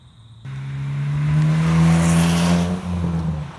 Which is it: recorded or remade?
recorded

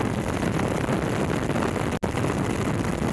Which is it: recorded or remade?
recorded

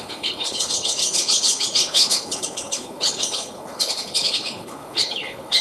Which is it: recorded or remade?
remade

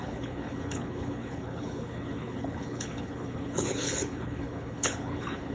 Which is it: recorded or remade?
remade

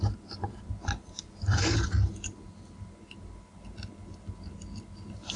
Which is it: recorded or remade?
recorded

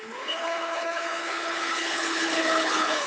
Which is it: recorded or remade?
remade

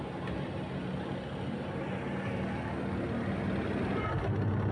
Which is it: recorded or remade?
recorded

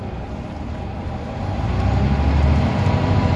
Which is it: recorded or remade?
recorded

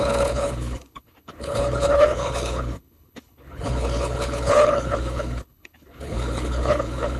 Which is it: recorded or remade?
remade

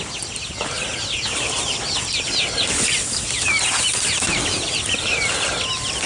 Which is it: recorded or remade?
recorded